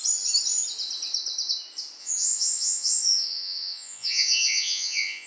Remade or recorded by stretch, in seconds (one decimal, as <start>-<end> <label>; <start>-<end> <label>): 0.0-2.0 recorded; 2.0-5.3 remade